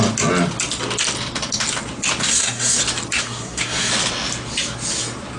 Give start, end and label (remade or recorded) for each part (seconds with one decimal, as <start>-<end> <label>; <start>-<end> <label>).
0.0-2.3 recorded; 2.3-2.8 remade; 2.8-3.2 recorded; 3.2-3.9 remade; 3.9-5.4 recorded